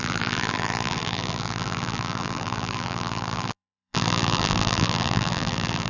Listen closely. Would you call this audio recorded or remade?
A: remade